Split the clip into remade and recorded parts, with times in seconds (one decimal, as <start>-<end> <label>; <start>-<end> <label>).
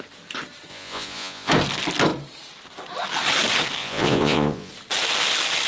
0.0-0.7 recorded; 0.7-1.5 remade; 1.5-3.8 recorded; 3.8-4.7 remade; 4.7-5.7 recorded